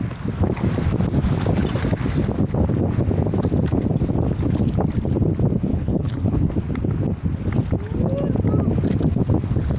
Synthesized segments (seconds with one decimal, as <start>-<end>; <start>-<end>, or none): 5.7-6.5